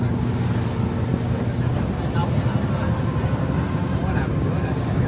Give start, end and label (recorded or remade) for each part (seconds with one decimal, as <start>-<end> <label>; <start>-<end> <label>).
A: 0.0-5.1 recorded